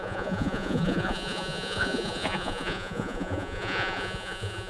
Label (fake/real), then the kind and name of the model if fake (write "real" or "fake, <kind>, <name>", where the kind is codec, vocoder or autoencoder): fake, vocoder, Vocos